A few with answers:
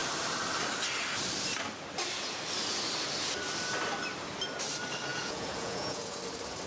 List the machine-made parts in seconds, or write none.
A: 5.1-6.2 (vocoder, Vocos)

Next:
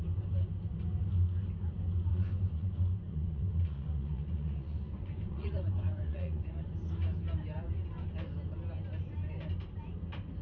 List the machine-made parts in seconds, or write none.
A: 2.1-6.7 (vocoder, Vocos)

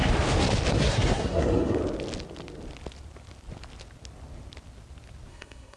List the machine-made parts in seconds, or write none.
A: 0.7-1.8 (codec, SNAC); 5.3-5.8

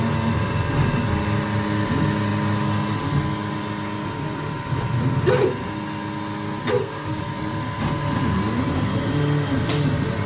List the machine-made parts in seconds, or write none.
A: 6.7-7.2 (codec, SNAC)

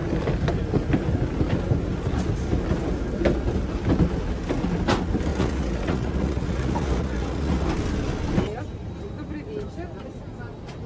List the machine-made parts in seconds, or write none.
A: 5.3-7.7 (vocoder, Vocos)